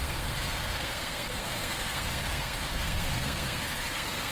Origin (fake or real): fake